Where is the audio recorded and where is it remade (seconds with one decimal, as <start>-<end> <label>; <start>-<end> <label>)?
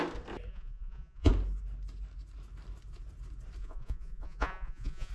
0.0-0.5 recorded; 0.5-1.3 remade; 1.3-3.6 recorded; 3.6-5.1 remade